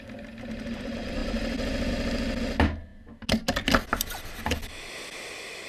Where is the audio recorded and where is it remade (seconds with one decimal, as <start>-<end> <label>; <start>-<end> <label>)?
0.0-1.2 recorded; 1.2-1.9 remade; 1.9-5.7 recorded